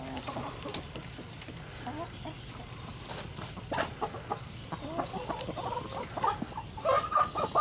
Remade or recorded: recorded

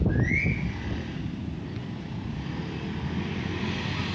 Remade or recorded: recorded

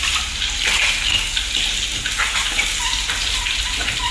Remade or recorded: recorded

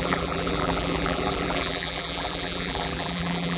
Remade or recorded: remade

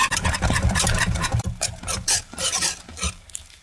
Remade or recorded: remade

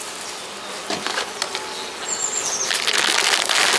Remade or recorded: recorded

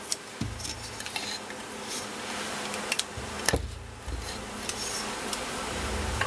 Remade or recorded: remade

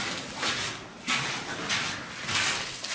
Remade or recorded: recorded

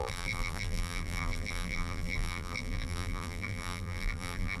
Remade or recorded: remade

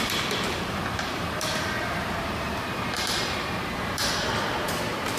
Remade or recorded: remade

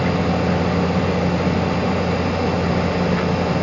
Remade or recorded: recorded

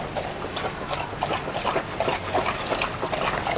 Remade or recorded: recorded